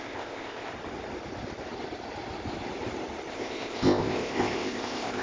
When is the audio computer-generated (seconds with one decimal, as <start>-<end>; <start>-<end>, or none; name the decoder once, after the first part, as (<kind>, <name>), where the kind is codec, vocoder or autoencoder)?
0.0-0.7 (codec, ZipCodec); 3.3-5.2